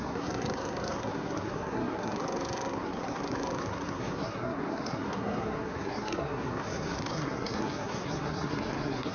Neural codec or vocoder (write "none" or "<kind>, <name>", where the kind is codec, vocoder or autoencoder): codec, SNAC